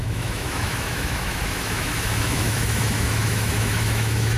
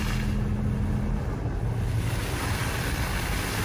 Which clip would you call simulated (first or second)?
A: first